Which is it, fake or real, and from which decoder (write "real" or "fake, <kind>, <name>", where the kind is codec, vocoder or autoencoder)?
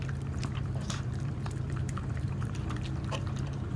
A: fake, vocoder, BigVGAN v2